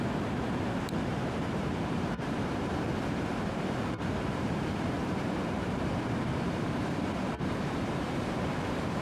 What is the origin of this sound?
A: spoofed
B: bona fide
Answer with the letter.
A